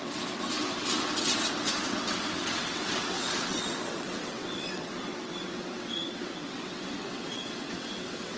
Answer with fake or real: fake